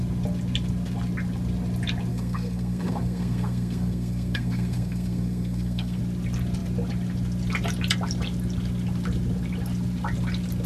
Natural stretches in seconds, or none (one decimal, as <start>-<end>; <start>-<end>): 0.0-2.1; 6.0-10.7

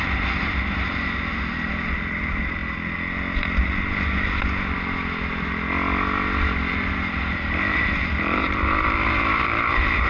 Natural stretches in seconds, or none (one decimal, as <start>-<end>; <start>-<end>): 2.6-6.7

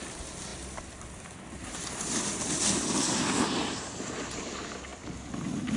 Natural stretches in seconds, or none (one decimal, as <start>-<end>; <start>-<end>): 0.0-5.8

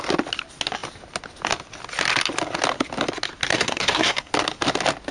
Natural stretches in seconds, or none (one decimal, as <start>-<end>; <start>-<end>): 0.0-3.5; 4.3-5.1

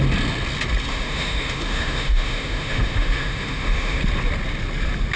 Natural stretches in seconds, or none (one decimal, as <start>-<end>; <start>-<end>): 0.0-0.9; 4.0-5.2

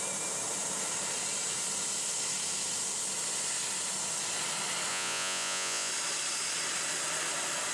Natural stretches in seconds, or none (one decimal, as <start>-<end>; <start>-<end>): 0.0-4.9; 5.9-7.7